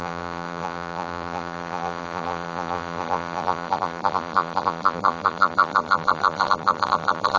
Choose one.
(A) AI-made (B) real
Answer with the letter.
A